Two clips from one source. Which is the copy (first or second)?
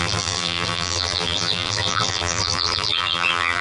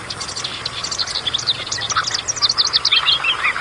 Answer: first